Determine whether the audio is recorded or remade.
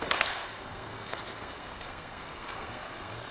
remade